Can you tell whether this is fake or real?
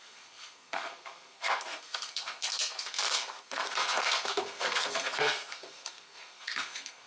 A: fake